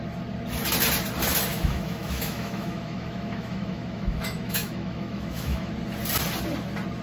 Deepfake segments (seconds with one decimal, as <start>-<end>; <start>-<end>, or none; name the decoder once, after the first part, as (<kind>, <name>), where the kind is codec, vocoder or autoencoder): 1.5-5.7 (autoencoder, DAC-VAE)